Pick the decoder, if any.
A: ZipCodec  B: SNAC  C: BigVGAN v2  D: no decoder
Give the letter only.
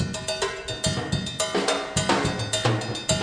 D